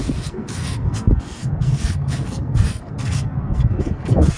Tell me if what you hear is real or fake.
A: fake